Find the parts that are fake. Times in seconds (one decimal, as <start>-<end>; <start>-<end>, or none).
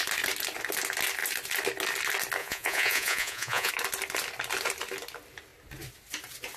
2.4-3.7